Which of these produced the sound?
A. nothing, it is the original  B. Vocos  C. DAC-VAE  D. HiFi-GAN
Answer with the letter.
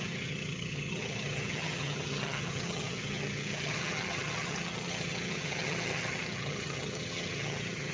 D